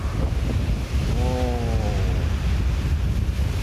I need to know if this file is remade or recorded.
recorded